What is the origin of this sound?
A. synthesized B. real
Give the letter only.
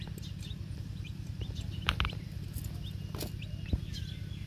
B